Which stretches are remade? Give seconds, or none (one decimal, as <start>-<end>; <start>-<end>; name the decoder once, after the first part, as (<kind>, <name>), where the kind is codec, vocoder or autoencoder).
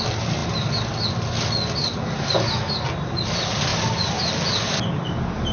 none